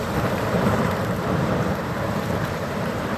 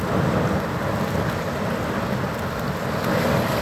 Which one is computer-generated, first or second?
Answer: first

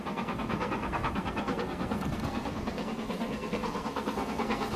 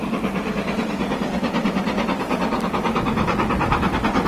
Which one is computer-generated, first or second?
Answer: first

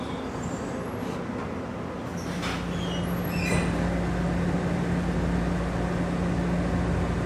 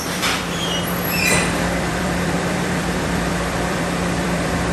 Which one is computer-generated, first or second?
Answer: second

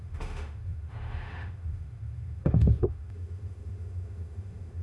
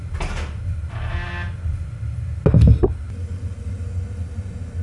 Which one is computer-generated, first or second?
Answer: first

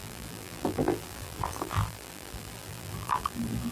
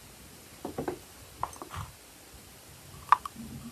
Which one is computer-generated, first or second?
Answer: first